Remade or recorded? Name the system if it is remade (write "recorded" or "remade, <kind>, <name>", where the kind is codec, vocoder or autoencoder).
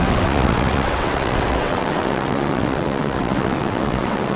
remade, vocoder, WaveNeXt